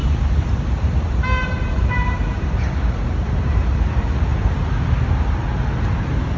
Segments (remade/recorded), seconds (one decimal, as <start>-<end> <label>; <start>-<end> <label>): 0.0-3.8 remade; 3.8-6.4 recorded